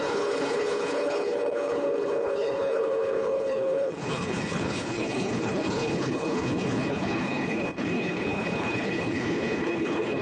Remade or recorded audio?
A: remade